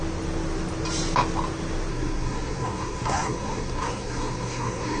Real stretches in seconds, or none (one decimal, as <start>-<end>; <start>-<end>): 0.0-1.9